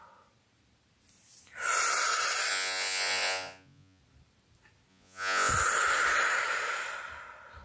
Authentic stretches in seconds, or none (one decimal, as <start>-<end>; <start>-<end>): 0.0-2.5; 4.0-4.9; 5.5-7.6